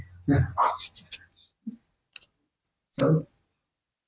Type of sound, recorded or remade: recorded